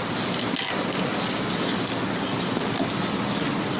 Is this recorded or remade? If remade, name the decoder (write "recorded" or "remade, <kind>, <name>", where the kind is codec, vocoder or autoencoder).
recorded